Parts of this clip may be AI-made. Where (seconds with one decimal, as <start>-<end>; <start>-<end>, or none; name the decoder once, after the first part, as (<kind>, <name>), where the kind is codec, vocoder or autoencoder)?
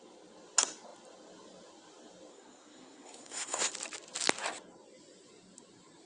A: 2.3-3.7 (codec, SNAC)